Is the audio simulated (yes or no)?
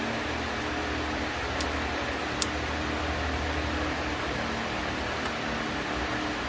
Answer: no